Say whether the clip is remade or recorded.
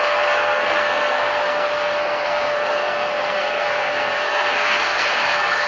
remade